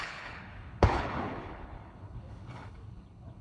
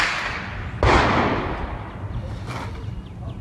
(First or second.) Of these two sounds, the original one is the second